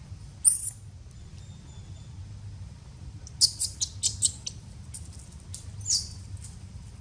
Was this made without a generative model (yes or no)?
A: yes